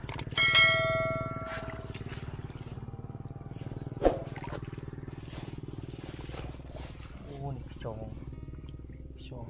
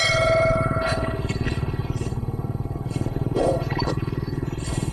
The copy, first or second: second